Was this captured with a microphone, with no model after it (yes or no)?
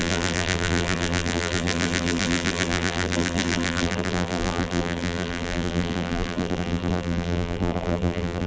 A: no